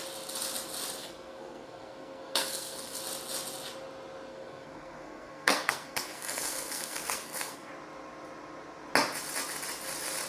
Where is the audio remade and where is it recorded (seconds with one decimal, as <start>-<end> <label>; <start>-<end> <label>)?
0.0-1.0 recorded; 1.0-3.0 remade; 3.0-4.3 recorded; 4.3-7.7 remade; 7.7-10.3 recorded